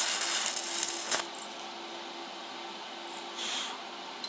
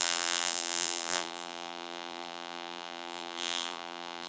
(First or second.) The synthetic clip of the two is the second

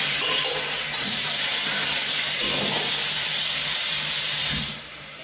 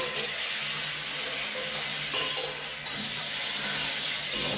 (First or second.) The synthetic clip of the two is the first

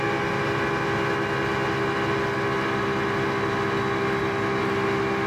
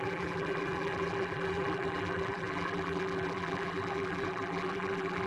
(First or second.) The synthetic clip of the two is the second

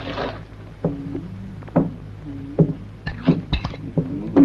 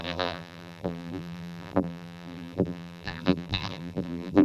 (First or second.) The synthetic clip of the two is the second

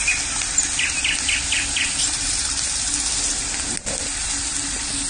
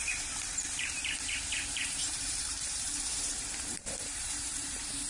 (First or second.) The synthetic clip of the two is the second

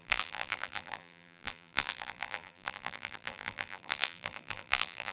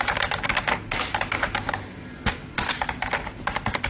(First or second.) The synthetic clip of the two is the first